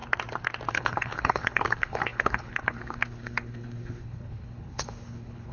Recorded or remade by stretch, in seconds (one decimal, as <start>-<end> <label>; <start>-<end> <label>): 0.0-0.7 recorded; 0.7-5.5 remade